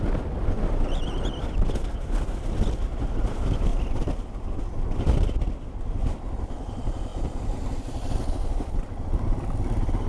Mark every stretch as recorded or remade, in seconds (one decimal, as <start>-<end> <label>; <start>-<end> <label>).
0.0-7.1 recorded; 7.1-8.1 remade; 8.1-10.1 recorded